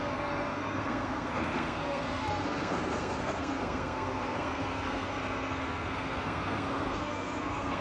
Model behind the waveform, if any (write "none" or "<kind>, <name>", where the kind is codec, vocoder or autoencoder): codec, SNAC